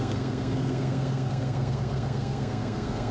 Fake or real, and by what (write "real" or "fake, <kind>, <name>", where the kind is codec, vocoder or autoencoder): fake, codec, SNAC